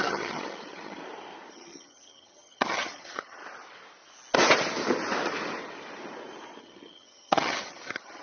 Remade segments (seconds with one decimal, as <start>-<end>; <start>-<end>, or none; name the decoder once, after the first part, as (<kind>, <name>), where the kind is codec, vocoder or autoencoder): 0.0-1.0 (vocoder, HiFi-GAN); 1.5-3.4; 6.6-8.2